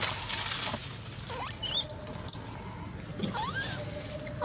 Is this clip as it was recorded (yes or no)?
yes